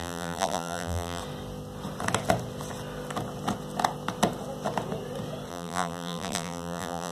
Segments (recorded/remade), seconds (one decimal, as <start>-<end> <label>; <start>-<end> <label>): 0.0-1.2 remade; 1.2-5.5 recorded; 5.5-7.1 remade